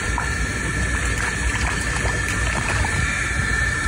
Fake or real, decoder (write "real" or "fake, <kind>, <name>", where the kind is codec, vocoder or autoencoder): real